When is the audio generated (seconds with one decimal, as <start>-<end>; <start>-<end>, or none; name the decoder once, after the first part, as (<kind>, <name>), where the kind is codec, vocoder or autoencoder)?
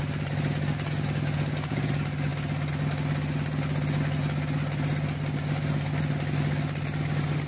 none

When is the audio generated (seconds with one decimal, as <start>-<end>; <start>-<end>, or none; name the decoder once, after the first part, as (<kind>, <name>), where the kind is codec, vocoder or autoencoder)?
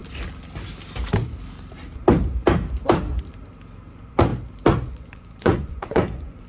3.9-4.3 (vocoder, Vocos); 4.9-6.5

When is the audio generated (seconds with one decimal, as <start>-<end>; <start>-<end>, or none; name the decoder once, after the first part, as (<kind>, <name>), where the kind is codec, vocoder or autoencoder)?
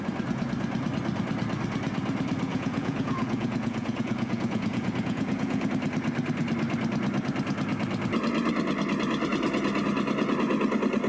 2.5-5.7 (vocoder, Vocos)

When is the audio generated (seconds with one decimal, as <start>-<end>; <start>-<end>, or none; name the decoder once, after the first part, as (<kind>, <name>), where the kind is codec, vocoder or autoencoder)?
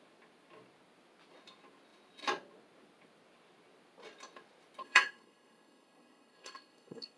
4.8-7.2 (codec, SNAC)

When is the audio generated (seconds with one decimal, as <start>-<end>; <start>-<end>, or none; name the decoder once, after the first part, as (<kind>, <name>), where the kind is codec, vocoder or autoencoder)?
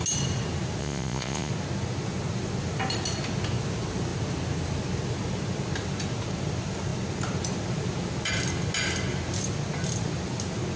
0.8-1.5 (vocoder, Vocos)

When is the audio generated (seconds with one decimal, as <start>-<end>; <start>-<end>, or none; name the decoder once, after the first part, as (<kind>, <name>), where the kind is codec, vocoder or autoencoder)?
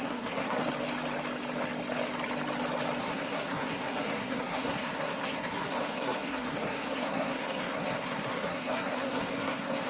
0.0-0.6 (codec, SNAC); 3.0-9.9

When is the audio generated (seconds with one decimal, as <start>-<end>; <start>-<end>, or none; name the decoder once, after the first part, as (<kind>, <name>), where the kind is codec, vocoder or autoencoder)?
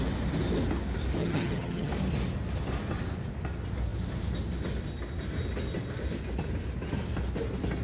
1.2-1.9 (vocoder, HiFi-GAN)